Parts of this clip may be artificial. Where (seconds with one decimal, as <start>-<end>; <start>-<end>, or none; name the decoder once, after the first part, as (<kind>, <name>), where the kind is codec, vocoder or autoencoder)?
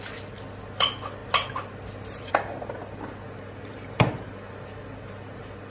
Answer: 3.7-4.5 (vocoder, BigVGAN v2)